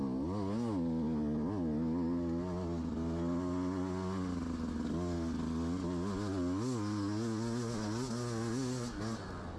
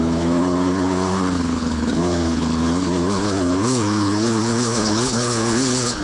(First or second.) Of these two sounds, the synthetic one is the second